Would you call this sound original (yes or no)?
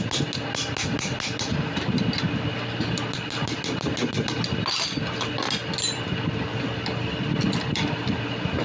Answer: yes